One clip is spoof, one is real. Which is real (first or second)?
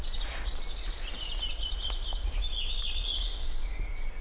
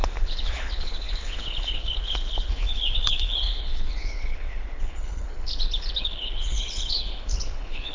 first